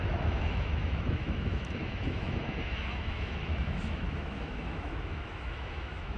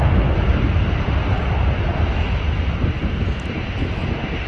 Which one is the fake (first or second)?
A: first